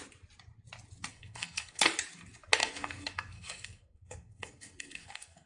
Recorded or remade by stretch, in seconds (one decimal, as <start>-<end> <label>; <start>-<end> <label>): 0.0-1.1 recorded; 1.1-1.8 remade; 1.8-2.6 recorded; 2.6-5.5 remade